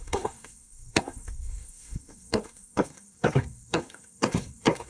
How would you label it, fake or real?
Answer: fake